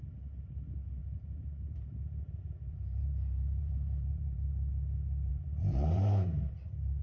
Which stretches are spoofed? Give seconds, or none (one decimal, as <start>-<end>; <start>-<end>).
1.0-4.7; 5.3-6.5